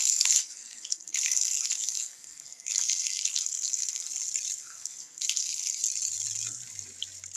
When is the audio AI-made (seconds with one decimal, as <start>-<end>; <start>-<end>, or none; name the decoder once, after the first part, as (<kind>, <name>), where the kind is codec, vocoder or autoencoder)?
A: 0.0-4.1 (codec, SNAC); 4.6-5.8